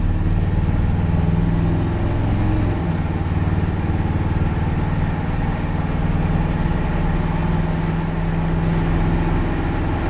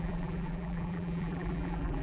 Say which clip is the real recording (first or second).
first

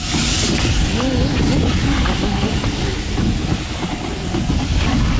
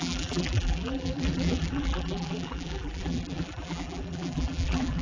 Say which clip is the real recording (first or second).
first